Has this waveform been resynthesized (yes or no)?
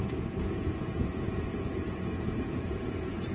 yes